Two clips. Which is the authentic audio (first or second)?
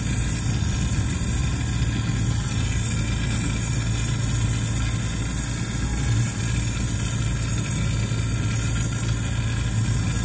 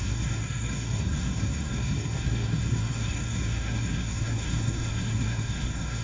first